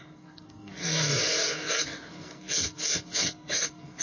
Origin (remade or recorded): remade